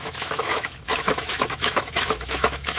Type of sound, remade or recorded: remade